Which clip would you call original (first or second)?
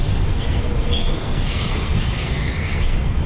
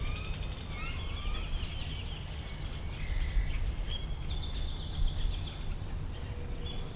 second